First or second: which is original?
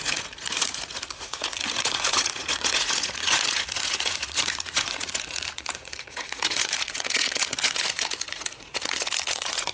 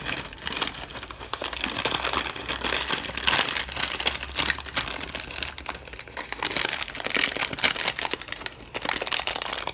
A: second